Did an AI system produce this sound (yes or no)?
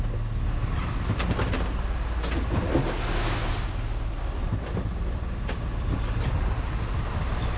no